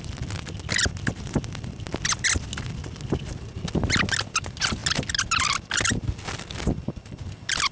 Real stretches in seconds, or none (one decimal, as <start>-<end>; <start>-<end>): 0.0-7.7